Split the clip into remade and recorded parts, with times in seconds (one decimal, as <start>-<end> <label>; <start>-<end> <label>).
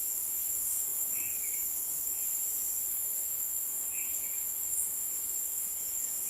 0.0-2.2 remade; 2.2-2.9 recorded; 2.9-6.3 remade